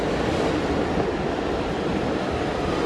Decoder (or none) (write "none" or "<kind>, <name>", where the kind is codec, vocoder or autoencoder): none